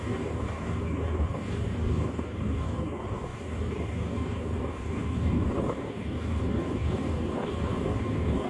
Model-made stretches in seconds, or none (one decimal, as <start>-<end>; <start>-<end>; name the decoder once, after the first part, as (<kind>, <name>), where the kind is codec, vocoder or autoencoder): 0.0-8.5 (codec, DAC)